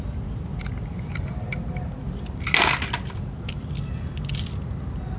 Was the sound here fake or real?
real